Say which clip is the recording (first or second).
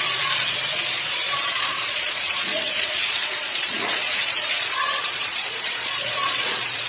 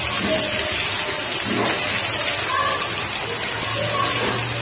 second